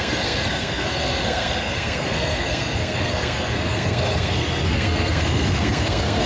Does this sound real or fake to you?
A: fake